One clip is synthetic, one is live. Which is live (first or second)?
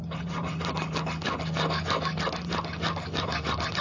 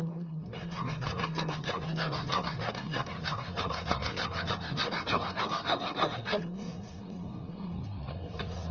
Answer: first